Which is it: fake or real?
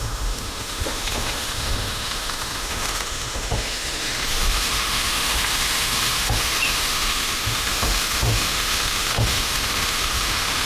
fake